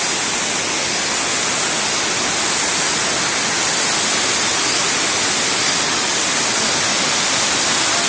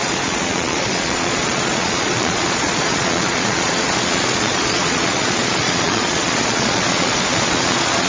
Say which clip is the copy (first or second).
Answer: second